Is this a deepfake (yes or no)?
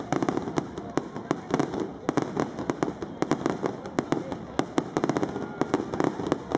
no